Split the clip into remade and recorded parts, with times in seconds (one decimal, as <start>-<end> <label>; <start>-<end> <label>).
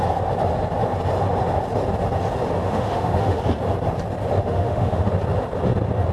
0.0-2.6 recorded; 2.6-3.4 remade; 3.4-4.4 recorded; 4.4-5.1 remade; 5.1-6.1 recorded